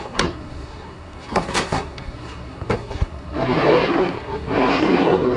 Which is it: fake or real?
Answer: fake